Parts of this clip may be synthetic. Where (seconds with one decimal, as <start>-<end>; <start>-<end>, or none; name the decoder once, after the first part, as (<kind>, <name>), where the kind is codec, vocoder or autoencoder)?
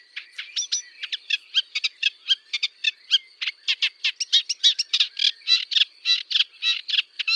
none